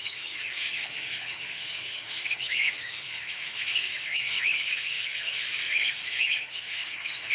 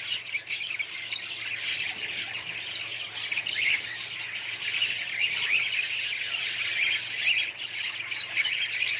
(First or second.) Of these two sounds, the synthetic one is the first